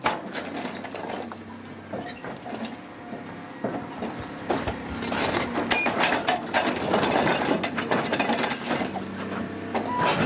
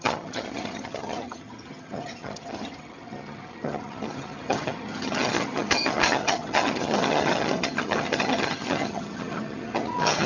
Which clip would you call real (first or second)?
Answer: first